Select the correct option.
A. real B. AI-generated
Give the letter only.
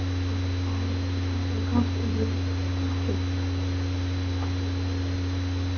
A